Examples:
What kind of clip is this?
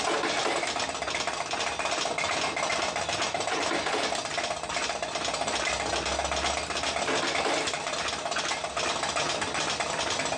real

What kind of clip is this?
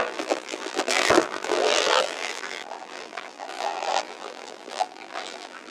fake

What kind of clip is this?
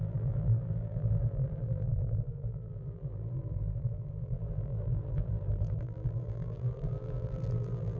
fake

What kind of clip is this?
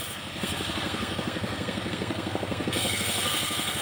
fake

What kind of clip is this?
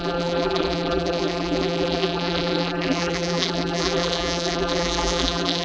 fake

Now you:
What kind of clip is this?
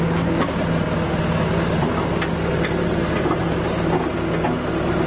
real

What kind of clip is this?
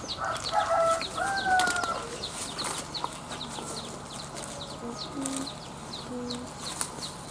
real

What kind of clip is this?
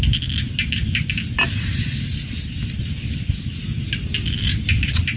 real